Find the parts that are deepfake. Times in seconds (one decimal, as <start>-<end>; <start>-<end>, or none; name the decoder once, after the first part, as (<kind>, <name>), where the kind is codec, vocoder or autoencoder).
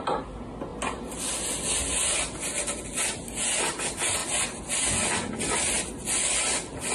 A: none